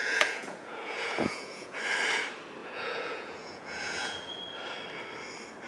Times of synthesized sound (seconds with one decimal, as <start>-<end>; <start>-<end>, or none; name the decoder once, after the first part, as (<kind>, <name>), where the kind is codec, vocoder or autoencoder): 0.0-1.8 (vocoder, Vocos); 2.6-4.4